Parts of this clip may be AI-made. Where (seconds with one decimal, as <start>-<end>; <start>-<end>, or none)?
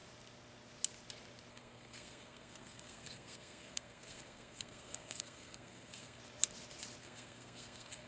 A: 1.5-6.2; 7.0-8.1